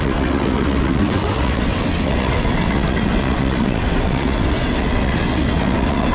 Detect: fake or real fake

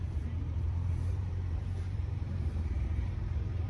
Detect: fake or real fake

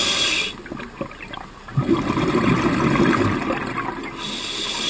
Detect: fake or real real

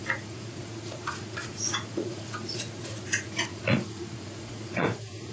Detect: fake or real fake